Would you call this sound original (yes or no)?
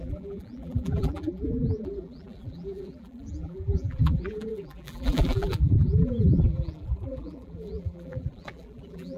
no